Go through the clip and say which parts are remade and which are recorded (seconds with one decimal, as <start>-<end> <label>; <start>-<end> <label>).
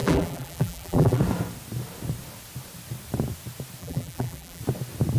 0.0-1.2 remade; 1.2-3.8 recorded; 3.8-4.6 remade; 4.6-5.2 recorded